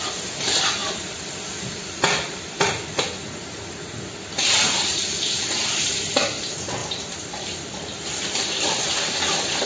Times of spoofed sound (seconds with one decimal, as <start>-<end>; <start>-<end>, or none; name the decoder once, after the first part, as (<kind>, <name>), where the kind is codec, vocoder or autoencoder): 0.8-3.0 (vocoder, BigVGAN v2); 6.8-8.8